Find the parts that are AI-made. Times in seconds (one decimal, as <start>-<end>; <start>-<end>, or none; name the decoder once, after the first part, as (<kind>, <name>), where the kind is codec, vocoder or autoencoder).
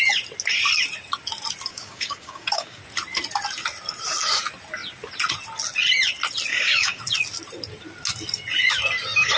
1.7-2.8 (codec, DAC); 6.5-7.0